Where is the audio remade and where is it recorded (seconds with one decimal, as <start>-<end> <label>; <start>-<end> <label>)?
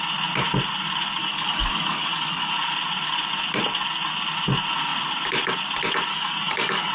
0.0-1.2 recorded; 1.2-2.5 remade; 2.5-6.1 recorded; 6.1-6.9 remade